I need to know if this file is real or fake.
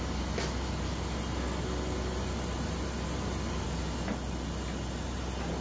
real